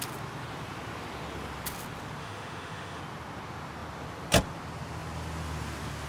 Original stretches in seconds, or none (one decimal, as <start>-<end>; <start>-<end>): 0.0-2.2; 3.0-6.1